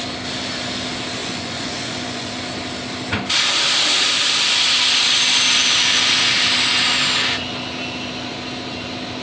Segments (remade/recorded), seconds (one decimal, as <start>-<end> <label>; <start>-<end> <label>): 0.0-1.2 recorded; 1.2-2.3 remade; 2.3-9.2 recorded